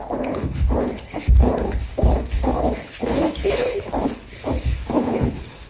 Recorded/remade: remade